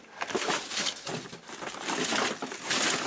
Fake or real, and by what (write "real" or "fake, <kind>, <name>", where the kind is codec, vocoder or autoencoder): real